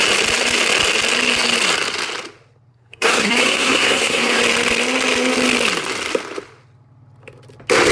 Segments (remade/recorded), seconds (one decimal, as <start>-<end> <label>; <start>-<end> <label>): 0.0-2.7 recorded; 2.7-4.4 remade; 4.4-7.9 recorded